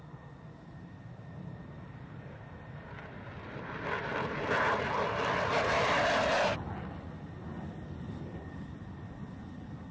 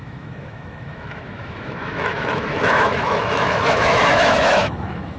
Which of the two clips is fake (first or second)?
second